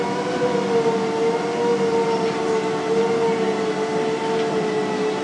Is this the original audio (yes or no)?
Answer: yes